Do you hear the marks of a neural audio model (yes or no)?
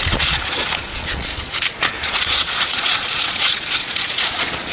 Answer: yes